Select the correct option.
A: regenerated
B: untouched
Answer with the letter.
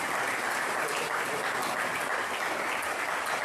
B